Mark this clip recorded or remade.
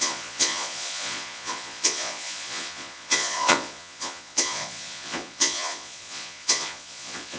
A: remade